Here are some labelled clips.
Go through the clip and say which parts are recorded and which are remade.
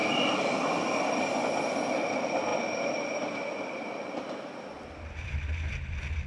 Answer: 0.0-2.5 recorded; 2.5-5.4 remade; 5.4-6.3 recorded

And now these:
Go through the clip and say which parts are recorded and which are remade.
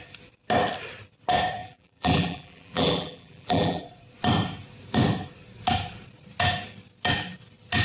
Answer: 0.0-1.6 recorded; 1.6-3.8 remade; 3.8-7.8 recorded